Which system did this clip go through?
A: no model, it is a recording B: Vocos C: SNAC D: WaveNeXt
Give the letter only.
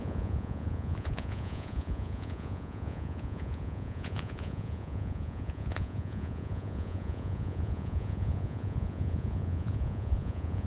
B